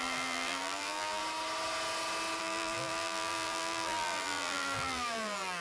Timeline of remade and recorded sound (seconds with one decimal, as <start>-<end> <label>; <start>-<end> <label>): 0.0-1.2 remade; 1.2-2.4 recorded; 2.4-5.6 remade